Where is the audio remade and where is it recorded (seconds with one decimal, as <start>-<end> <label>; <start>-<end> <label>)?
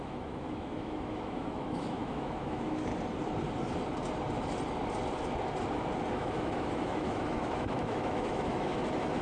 0.0-2.9 remade; 2.9-6.1 recorded; 6.1-9.2 remade